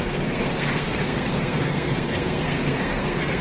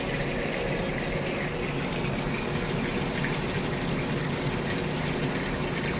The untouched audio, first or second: second